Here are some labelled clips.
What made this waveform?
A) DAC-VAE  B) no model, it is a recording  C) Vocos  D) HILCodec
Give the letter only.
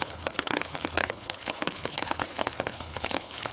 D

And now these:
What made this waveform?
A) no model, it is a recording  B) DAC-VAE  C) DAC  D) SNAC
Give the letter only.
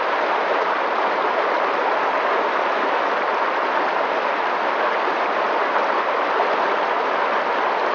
A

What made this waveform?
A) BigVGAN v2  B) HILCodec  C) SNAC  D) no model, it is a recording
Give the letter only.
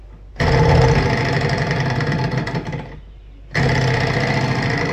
D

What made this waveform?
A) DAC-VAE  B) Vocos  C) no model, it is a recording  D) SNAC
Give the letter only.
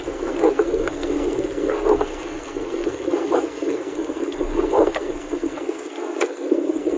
D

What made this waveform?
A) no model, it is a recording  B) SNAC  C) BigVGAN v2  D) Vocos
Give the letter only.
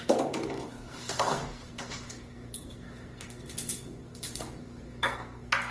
B